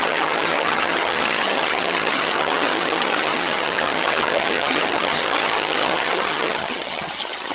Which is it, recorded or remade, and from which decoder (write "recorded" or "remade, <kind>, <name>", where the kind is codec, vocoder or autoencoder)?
remade, vocoder, HiFi-GAN